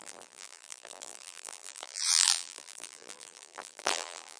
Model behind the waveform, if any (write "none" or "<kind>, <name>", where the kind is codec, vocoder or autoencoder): vocoder, BigVGAN v2